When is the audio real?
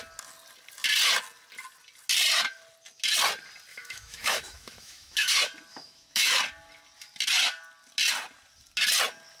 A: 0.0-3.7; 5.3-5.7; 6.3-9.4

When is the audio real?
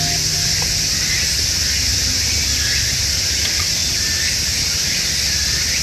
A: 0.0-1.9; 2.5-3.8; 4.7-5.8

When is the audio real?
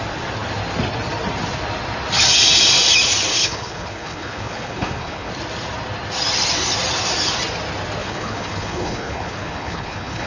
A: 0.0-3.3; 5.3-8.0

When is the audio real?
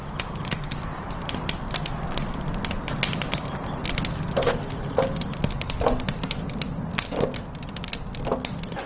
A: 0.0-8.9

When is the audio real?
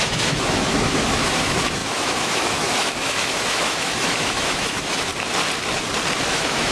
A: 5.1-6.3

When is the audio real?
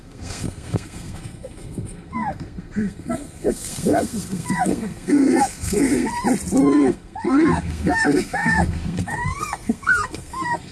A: 6.1-6.7